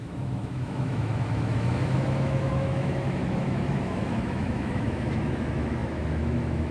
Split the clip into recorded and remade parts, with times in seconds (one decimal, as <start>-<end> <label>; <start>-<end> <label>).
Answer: 0.0-6.7 remade